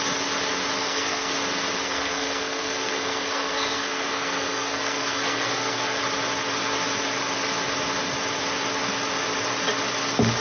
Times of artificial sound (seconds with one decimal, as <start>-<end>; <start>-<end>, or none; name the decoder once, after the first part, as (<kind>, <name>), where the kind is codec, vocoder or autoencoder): 0.8-1.3 (codec, SNAC); 1.8-6.0